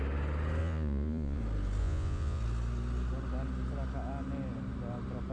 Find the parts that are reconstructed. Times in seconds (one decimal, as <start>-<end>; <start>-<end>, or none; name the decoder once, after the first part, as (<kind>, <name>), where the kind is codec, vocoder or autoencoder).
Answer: 0.6-1.4 (vocoder, Vocos); 1.8-2.4